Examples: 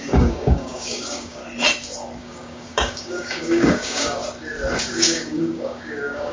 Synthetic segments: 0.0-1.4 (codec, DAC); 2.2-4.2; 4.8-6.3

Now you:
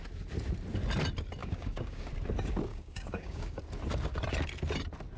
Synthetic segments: 1.4-2.1 (codec, DAC); 2.7-3.6

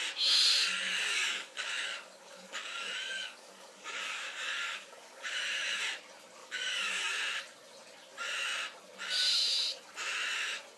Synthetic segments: 0.6-5.8 (codec, DAC); 6.4-7.1

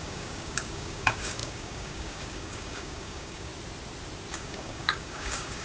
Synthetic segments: 0.0-3.5 (codec, DAC); 4.3-5.6

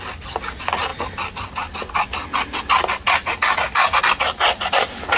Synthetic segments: none

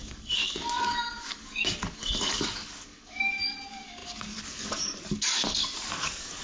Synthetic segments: 0.0-6.4 (codec, DAC)